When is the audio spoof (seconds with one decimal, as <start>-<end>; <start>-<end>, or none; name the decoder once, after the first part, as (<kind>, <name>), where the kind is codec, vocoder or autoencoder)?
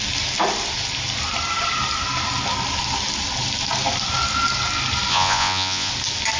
5.1-5.9 (vocoder, Vocos)